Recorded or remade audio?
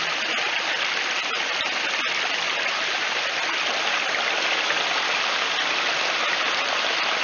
recorded